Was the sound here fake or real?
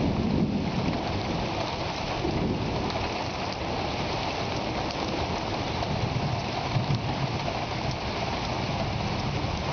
real